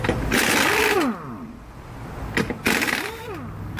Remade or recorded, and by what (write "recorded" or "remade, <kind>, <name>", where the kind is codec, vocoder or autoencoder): recorded